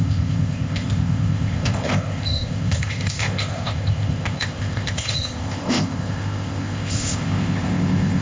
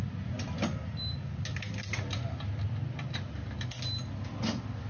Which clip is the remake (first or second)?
first